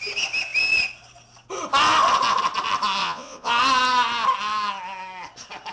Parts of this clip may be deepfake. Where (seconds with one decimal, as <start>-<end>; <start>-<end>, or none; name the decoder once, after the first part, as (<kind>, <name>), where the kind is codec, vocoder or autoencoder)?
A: 3.0-3.5 (vocoder, Vocos)